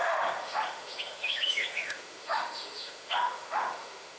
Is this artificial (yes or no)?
yes